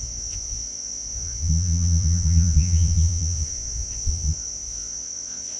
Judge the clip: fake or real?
fake